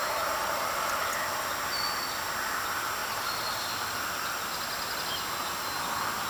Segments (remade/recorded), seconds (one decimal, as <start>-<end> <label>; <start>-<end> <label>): 0.0-1.1 remade; 1.1-3.0 recorded; 3.0-3.6 remade; 3.6-6.3 recorded